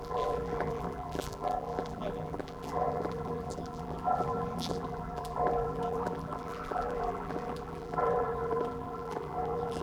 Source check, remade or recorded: remade